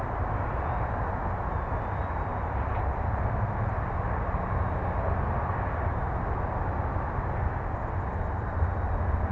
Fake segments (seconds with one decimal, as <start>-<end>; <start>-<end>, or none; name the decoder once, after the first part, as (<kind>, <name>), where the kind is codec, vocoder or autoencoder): none